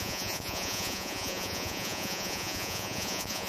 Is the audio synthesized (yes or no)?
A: yes